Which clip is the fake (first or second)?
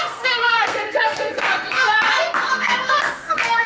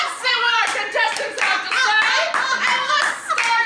first